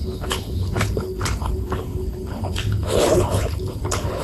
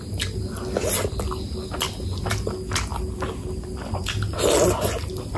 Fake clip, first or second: first